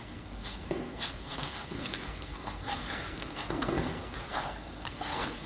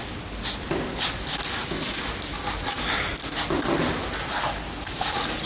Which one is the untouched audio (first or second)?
second